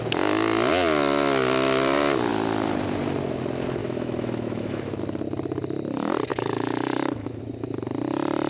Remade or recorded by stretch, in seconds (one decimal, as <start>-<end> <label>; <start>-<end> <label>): 0.0-3.8 recorded; 3.8-5.0 remade; 5.0-6.3 recorded; 6.3-7.4 remade; 7.4-8.5 recorded